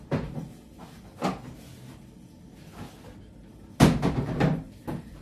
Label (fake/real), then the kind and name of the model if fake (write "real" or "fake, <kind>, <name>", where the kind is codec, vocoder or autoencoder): real